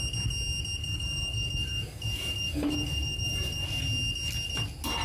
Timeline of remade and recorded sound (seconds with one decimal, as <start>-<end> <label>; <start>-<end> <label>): 0.0-0.8 recorded; 0.8-3.8 remade; 3.8-5.0 recorded